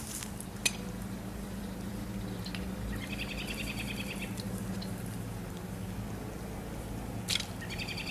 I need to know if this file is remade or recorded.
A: recorded